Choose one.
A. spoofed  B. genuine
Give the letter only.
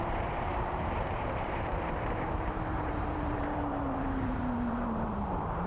A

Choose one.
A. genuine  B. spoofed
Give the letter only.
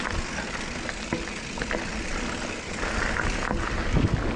A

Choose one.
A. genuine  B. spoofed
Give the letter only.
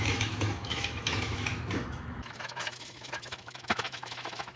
B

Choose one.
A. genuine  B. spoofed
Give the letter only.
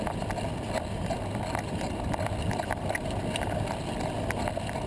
A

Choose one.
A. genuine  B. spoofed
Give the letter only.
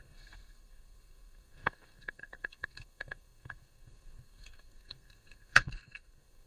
B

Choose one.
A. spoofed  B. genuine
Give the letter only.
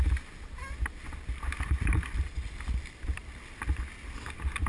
B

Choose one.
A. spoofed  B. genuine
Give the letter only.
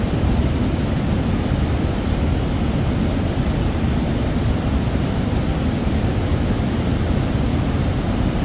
B